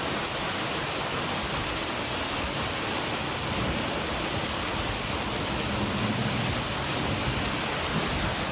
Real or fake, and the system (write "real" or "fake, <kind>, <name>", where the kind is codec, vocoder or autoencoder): real